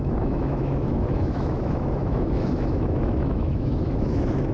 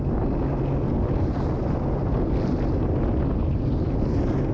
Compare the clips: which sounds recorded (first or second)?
second